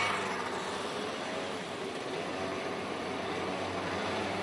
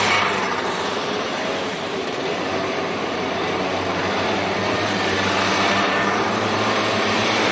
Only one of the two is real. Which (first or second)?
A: first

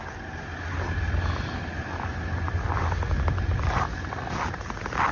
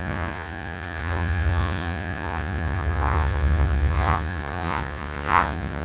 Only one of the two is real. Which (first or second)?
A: first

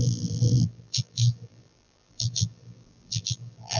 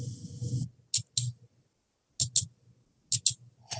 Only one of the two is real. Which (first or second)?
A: second